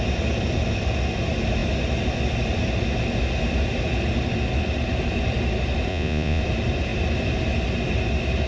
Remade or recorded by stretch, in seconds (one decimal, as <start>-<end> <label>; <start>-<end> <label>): 0.0-5.9 recorded; 5.9-6.4 remade; 6.4-8.5 recorded